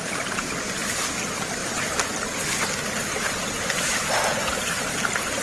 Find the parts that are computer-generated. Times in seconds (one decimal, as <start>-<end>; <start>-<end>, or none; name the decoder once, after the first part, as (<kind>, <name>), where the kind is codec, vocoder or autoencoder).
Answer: none